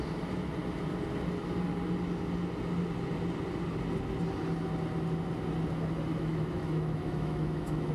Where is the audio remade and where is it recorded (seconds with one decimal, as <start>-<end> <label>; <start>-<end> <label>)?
0.0-6.1 recorded; 6.1-7.9 remade